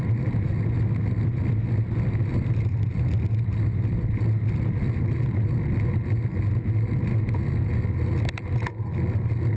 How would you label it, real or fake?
real